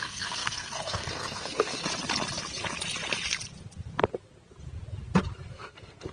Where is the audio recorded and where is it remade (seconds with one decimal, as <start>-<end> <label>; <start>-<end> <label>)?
0.0-1.8 remade; 1.8-5.5 recorded; 5.5-6.1 remade